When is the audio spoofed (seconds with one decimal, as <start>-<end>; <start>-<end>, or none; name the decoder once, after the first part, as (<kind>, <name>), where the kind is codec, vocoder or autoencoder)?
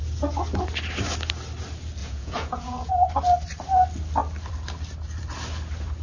2.0-2.9 (vocoder, Vocos)